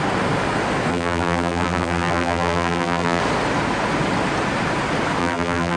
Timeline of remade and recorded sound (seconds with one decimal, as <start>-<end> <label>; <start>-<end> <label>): 0.0-0.9 recorded; 0.9-3.2 remade; 3.2-5.2 recorded; 5.2-5.8 remade